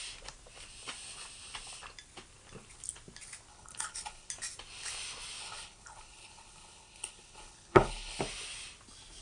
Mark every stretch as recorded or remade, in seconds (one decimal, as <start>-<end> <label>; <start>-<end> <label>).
0.0-3.5 recorded; 3.5-4.3 remade; 4.3-5.4 recorded; 5.4-8.2 remade; 8.2-9.2 recorded